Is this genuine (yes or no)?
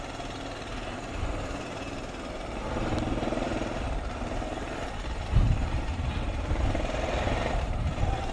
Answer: no